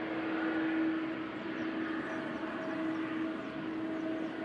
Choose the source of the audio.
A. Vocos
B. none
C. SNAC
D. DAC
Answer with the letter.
B